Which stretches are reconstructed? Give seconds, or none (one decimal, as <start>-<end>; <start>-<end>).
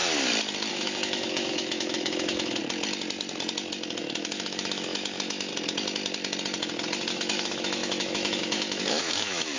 0.7-2.6; 4.0-5.5; 7.1-9.6